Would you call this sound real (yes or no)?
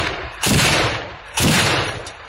no